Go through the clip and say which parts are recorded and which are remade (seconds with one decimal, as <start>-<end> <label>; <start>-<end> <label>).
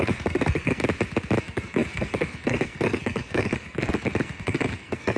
0.0-0.8 remade; 0.8-1.4 recorded; 1.4-5.2 remade